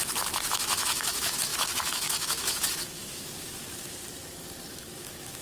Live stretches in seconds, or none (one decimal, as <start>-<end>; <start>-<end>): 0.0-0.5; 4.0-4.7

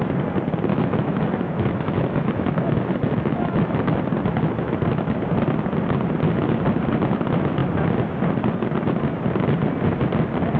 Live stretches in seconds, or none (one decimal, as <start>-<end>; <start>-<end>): 0.0-0.7; 4.0-10.6

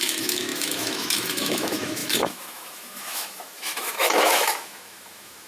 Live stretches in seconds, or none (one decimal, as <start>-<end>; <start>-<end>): none

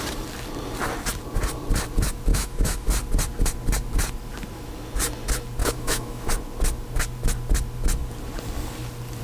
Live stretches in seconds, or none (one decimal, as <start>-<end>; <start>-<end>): 0.0-2.3; 2.9-5.6; 6.3-9.2